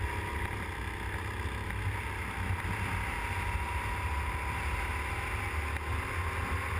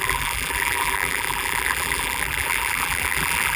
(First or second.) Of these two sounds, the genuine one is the first